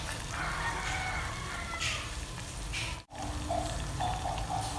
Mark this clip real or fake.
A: real